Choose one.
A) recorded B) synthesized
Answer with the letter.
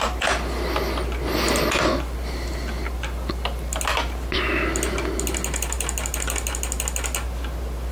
A